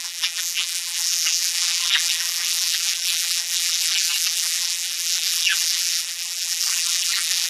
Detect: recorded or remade remade